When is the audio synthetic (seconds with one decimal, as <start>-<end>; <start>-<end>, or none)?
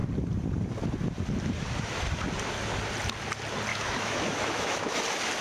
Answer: 3.7-5.0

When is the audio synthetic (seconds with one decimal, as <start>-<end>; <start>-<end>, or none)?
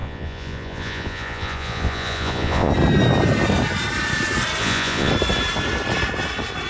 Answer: 0.0-2.7; 4.6-5.1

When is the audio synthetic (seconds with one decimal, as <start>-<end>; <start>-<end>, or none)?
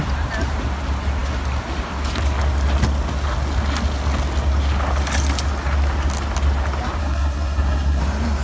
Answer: 7.0-8.0